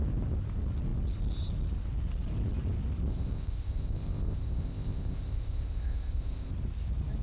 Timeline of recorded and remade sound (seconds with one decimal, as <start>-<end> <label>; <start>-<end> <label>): 0.0-3.1 recorded; 3.1-6.5 remade; 6.5-7.2 recorded

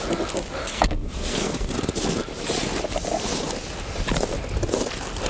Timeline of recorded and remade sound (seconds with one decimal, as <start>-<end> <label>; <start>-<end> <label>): 0.0-0.6 recorded; 0.6-1.7 remade; 1.7-5.3 recorded

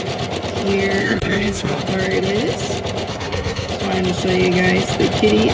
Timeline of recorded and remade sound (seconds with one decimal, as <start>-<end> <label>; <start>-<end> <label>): 0.0-1.0 recorded; 1.0-1.8 remade; 1.8-3.1 recorded; 3.1-3.7 remade; 3.7-5.5 recorded